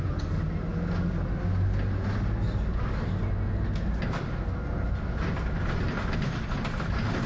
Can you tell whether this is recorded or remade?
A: recorded